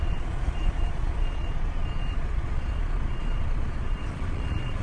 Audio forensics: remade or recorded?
remade